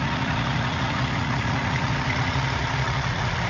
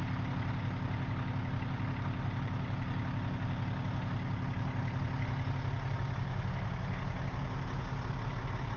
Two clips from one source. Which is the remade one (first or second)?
first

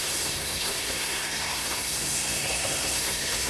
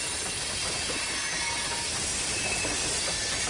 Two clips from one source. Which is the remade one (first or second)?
first